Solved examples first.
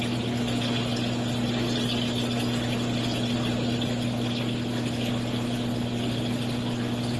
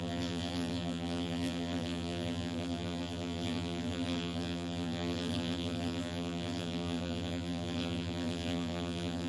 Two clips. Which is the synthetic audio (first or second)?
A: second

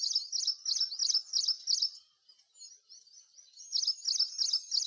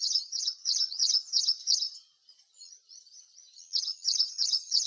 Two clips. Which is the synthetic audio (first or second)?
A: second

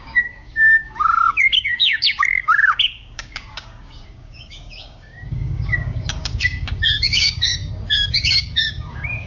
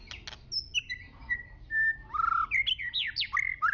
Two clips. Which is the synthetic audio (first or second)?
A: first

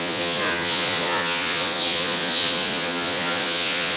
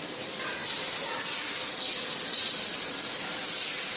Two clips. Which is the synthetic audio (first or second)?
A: first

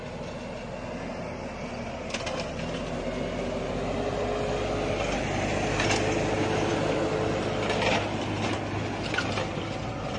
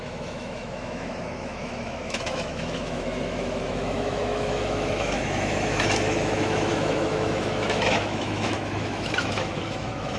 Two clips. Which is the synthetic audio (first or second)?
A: second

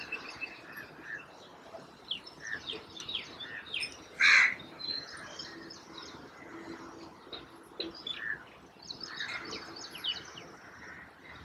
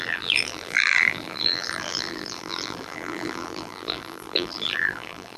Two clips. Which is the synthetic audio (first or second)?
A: second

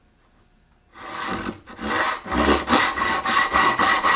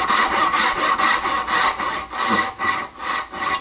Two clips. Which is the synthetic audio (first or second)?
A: second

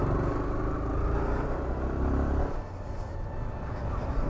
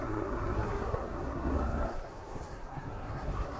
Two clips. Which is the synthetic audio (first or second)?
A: second